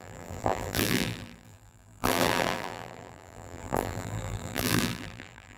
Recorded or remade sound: remade